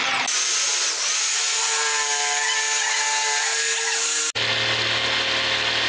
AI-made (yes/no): no